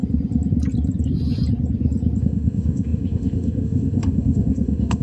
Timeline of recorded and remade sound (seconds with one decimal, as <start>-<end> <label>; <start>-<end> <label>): 0.0-2.2 recorded; 2.2-5.0 remade